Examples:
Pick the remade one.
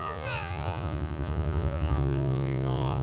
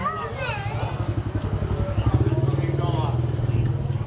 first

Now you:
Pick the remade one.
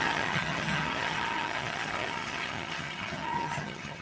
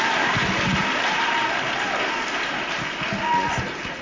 first